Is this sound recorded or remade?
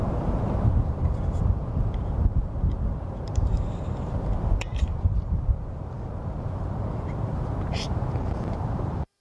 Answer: remade